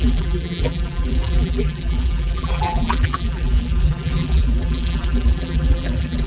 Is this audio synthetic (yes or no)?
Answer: yes